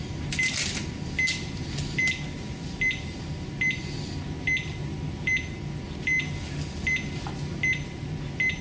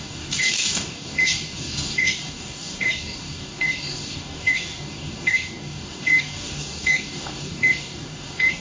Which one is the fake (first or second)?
second